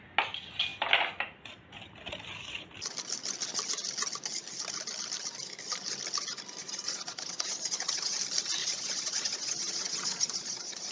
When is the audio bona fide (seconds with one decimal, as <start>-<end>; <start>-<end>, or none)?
0.0-6.6; 8.2-8.6

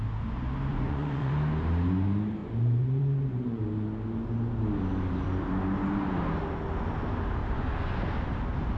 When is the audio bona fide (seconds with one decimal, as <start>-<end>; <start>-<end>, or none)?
0.0-0.7; 1.3-2.4; 3.6-7.4; 8.0-8.8

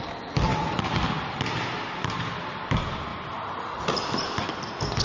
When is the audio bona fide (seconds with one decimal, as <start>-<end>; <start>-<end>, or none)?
0.0-5.0

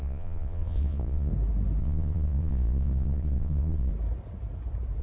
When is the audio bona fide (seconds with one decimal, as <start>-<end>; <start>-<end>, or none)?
1.3-1.8; 3.9-5.0

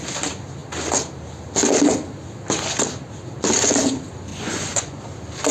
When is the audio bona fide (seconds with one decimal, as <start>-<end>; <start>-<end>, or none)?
0.0-4.3; 5.0-5.5

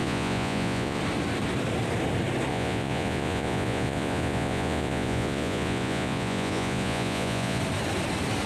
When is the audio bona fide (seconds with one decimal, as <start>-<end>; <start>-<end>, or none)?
1.0-2.5; 7.6-8.5

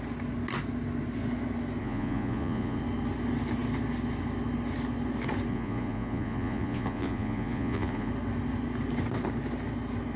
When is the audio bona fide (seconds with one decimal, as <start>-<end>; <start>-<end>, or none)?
0.0-1.8; 2.8-5.5; 8.1-10.2